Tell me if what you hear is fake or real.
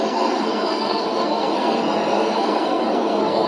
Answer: fake